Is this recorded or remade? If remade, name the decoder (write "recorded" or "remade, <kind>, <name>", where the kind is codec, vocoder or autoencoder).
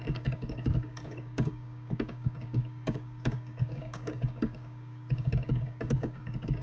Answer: remade, codec, DAC